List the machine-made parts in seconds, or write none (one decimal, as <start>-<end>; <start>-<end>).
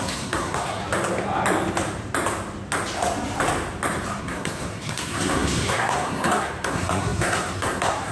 0.0-0.8; 4.2-8.1